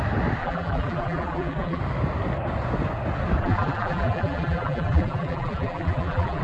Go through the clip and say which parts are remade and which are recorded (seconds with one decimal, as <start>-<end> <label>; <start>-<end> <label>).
0.0-0.4 recorded; 0.4-1.8 remade; 1.8-3.4 recorded; 3.4-6.4 remade